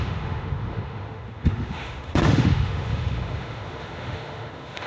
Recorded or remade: remade